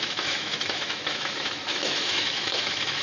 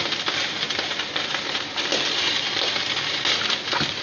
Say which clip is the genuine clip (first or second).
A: second